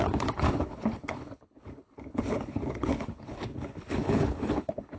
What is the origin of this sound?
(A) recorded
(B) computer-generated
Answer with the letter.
B